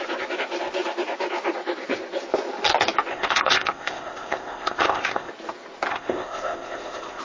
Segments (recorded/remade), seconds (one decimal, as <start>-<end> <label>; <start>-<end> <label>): 0.0-3.1 recorded; 3.1-5.3 remade; 5.3-5.9 recorded; 5.9-7.2 remade